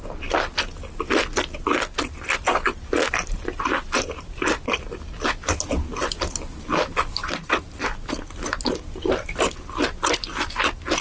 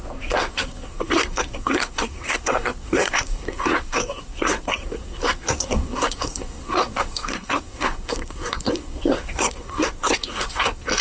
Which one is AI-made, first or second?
second